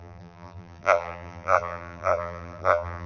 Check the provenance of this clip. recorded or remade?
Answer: remade